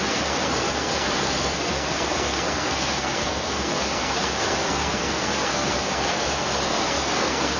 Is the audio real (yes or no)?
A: no